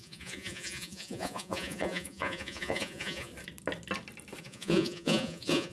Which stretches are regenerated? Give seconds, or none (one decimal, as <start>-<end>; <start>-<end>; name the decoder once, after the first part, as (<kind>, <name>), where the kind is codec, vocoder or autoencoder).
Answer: 0.0-3.3 (vocoder, Vocos); 4.4-5.7